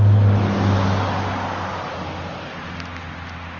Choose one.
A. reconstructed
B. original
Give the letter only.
B